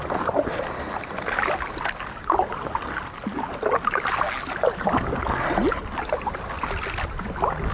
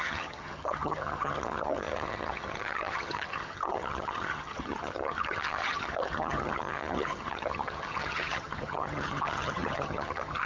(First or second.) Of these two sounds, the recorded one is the first